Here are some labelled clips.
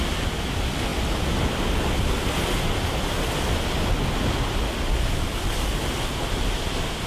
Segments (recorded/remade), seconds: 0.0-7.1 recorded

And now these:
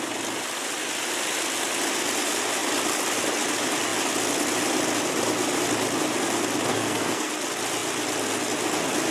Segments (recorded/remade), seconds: 0.0-6.7 recorded; 6.7-7.3 remade; 7.3-9.1 recorded

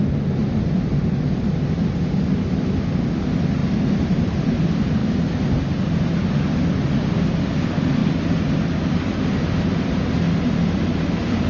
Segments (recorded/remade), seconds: 0.0-0.4 recorded; 0.4-1.1 remade; 1.1-3.6 recorded; 3.6-4.6 remade; 4.6-11.5 recorded

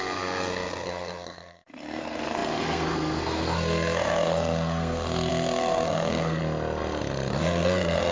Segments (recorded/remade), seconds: 0.0-6.4 remade; 6.4-7.3 recorded; 7.3-8.1 remade

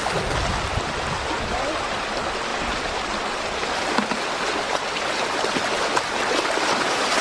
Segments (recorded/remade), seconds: 0.0-2.5 recorded; 2.5-4.7 remade; 4.7-7.2 recorded

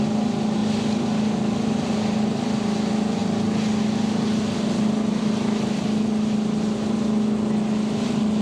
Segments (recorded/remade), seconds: 0.0-8.4 recorded